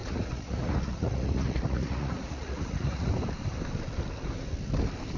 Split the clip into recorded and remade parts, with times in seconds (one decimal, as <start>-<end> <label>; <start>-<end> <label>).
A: 0.0-3.1 remade; 3.1-5.2 recorded